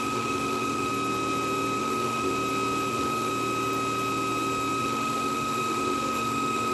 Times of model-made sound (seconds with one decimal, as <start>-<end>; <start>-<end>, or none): 0.0-0.9; 1.8-2.3; 2.9-3.3; 4.8-6.7